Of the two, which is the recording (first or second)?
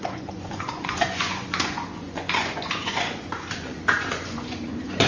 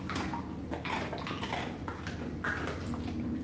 second